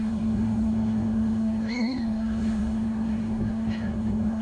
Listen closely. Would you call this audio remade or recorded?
remade